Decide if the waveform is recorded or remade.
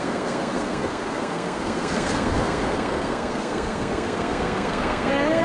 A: remade